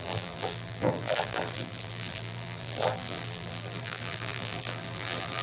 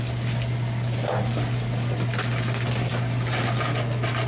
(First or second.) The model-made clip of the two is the first